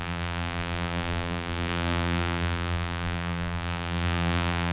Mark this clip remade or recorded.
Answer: remade